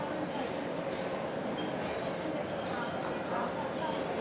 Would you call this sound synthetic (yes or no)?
no